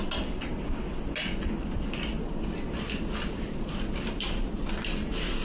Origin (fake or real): real